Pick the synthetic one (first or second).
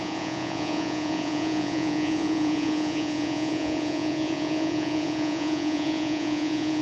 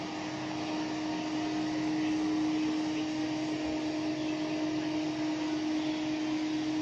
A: first